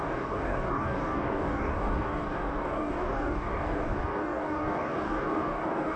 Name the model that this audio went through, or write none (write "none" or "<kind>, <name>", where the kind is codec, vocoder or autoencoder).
codec, DAC